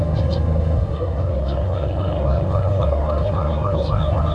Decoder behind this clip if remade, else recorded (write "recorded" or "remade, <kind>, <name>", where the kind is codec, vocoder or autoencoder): remade, codec, SNAC